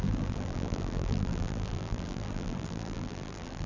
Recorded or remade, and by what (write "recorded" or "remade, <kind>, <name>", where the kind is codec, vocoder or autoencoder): remade, vocoder, BigVGAN v2